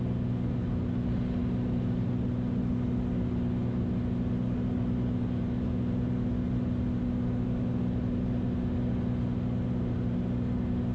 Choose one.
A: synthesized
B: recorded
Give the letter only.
B